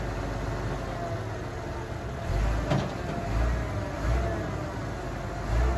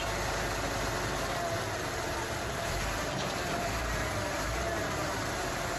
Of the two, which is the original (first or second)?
first